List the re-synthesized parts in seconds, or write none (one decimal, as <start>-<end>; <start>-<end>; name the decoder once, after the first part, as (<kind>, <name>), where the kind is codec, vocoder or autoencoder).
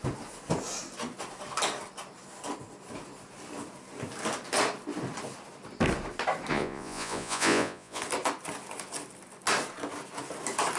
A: 6.5-8.0 (vocoder, Vocos)